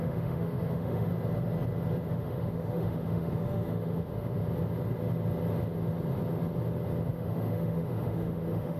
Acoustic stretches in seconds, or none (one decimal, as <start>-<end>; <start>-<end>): 1.1-2.1; 4.4-7.1